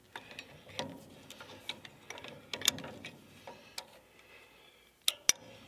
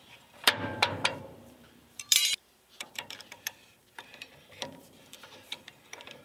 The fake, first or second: second